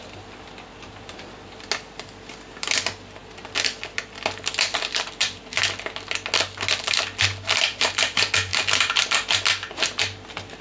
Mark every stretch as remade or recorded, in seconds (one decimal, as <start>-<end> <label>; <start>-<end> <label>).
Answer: 0.0-10.6 recorded